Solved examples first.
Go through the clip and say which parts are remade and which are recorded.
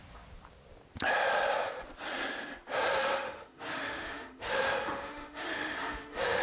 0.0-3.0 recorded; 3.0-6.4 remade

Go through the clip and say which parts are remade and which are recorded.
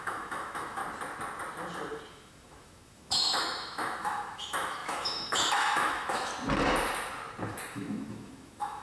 0.0-0.8 remade; 0.8-2.1 recorded; 2.1-6.3 remade; 6.3-7.7 recorded; 7.7-8.8 remade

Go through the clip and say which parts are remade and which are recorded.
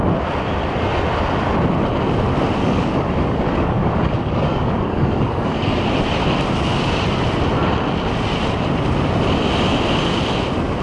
0.0-2.6 recorded; 2.6-5.8 remade; 5.8-10.8 recorded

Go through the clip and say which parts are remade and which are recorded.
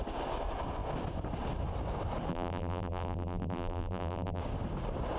0.0-2.3 recorded; 2.3-4.4 remade; 4.4-5.2 recorded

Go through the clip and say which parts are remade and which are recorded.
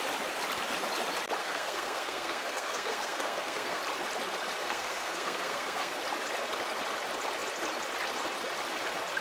0.0-1.4 recorded; 1.4-3.8 remade; 3.8-4.6 recorded; 4.6-6.0 remade; 6.0-9.2 recorded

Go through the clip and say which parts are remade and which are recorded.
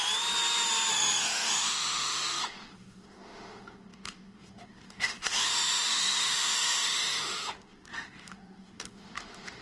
0.0-0.9 recorded; 0.9-9.6 remade